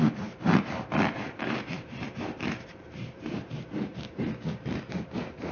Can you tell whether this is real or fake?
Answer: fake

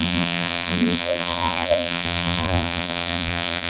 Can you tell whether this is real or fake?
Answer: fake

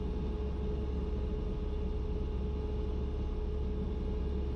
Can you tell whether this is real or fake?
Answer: real